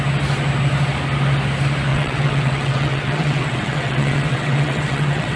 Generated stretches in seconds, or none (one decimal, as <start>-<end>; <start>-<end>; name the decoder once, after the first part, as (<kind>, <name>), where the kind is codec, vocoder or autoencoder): 1.9-5.4 (vocoder, WaveNeXt)